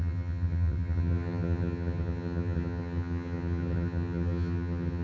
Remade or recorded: remade